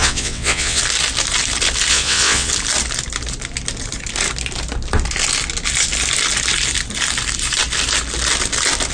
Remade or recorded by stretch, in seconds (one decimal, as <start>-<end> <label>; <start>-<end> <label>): 0.0-0.8 remade; 0.8-1.9 recorded; 1.9-2.5 remade; 2.5-8.9 recorded